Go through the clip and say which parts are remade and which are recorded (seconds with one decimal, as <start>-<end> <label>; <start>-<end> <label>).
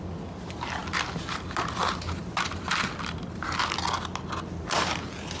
0.0-5.4 recorded